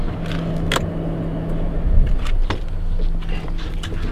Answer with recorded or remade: recorded